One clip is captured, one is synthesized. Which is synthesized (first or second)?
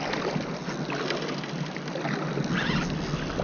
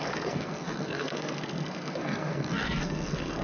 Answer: second